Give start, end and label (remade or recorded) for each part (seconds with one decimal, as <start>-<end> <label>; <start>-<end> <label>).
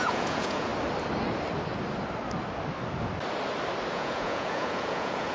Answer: 0.0-0.7 remade; 0.7-3.9 recorded; 3.9-5.3 remade